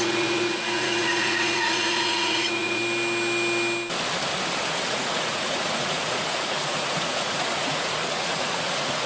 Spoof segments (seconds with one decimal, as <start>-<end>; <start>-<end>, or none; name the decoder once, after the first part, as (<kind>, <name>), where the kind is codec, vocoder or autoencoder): 0.0-2.8 (vocoder, Vocos); 4.9-9.1